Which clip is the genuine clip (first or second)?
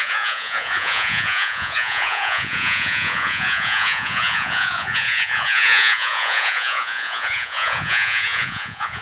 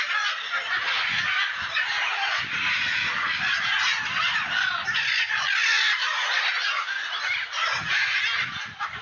second